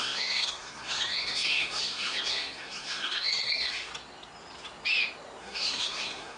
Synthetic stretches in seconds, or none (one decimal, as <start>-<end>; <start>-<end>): 0.0-3.9; 5.4-6.4